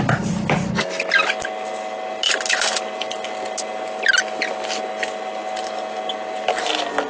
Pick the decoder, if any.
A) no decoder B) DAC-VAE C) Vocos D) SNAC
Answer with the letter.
A